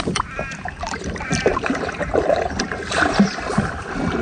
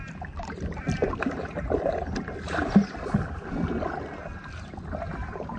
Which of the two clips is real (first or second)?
second